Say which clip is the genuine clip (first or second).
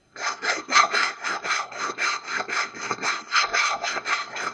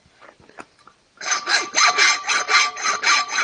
second